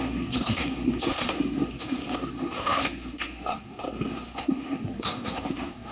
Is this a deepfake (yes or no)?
yes